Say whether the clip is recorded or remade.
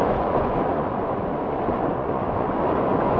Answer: remade